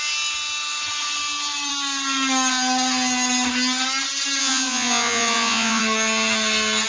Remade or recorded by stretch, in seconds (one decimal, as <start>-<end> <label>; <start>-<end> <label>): 0.0-4.4 recorded; 4.4-5.8 remade; 5.8-6.9 recorded